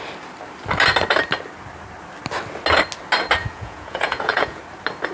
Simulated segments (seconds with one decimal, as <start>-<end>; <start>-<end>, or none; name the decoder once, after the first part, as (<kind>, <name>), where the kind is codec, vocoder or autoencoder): 3.4-4.6 (vocoder, Vocos)